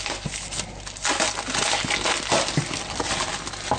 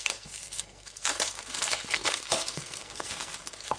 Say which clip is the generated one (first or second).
second